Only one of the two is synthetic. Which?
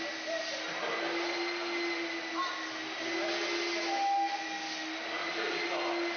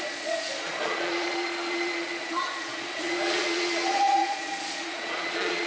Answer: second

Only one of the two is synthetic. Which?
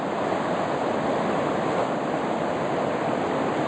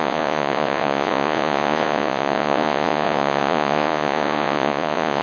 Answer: second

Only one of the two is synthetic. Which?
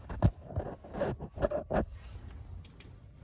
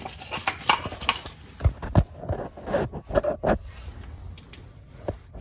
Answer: first